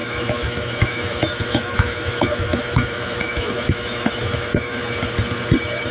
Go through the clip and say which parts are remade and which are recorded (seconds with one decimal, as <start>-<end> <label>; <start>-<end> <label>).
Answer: 0.0-4.8 remade; 4.8-5.9 recorded